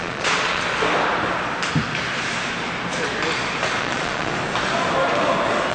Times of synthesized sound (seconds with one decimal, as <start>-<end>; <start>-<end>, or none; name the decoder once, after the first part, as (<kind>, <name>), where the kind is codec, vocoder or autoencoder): 0.0-0.6 (vocoder, Vocos); 3.8-4.3